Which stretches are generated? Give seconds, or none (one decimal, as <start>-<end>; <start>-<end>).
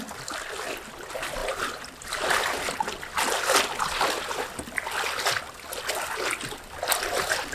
none